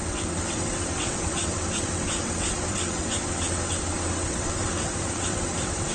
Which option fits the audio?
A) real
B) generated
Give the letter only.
B